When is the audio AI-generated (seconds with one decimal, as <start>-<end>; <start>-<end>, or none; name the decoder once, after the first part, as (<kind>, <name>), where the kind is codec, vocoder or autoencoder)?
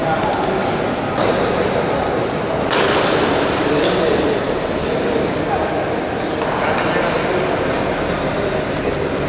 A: none